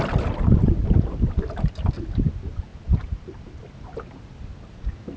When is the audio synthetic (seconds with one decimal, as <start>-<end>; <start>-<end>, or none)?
2.7-3.6